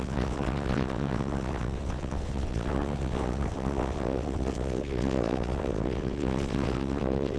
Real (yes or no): no